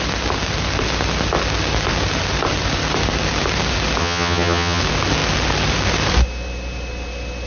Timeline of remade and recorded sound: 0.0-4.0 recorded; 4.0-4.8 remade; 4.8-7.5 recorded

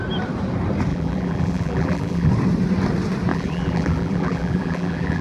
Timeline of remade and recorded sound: 0.0-0.9 recorded; 0.9-2.3 remade; 2.3-3.3 recorded; 3.3-5.2 remade

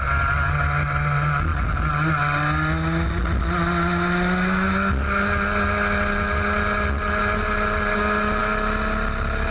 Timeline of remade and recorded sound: 0.0-9.5 recorded